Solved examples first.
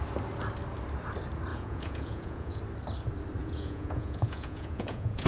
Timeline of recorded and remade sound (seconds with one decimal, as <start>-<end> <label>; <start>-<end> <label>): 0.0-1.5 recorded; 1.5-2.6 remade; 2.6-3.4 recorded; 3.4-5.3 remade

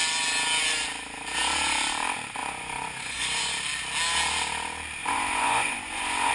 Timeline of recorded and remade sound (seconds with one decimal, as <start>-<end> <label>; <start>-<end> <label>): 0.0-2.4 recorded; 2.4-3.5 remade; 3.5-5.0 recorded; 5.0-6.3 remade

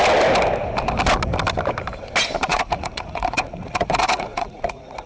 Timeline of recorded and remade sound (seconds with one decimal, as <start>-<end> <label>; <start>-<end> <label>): 0.0-2.5 recorded; 2.5-5.1 remade